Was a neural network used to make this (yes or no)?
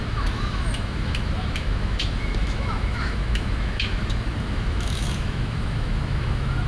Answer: yes